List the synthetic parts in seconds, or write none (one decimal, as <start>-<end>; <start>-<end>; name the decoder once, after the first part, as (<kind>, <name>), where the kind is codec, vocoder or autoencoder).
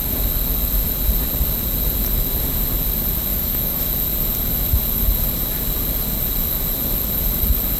3.3-3.8 (codec, DAC)